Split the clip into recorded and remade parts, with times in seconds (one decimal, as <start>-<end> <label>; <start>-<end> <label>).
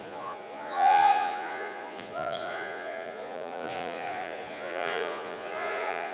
0.0-6.1 remade